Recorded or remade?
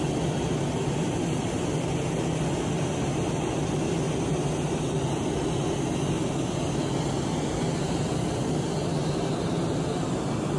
recorded